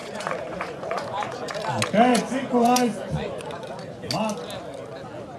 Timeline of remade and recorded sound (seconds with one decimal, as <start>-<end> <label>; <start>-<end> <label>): 0.0-1.5 remade; 1.5-2.1 recorded; 2.1-3.7 remade; 3.7-5.4 recorded